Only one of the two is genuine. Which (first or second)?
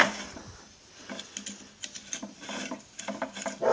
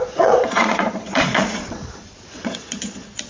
first